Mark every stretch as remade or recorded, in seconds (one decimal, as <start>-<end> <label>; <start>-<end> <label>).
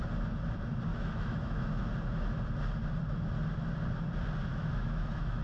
0.0-0.9 recorded; 0.9-1.8 remade; 1.8-4.5 recorded; 4.5-5.4 remade